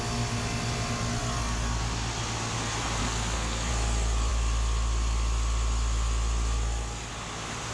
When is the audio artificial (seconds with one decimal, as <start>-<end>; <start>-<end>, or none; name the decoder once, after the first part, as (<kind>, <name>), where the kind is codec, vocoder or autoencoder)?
3.0-3.7 (codec, SNAC)